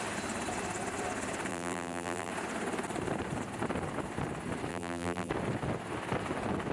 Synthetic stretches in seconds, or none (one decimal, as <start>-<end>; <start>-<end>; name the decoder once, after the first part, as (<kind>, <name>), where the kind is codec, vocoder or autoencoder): 1.5-2.3 (vocoder, BigVGAN v2); 4.7-5.3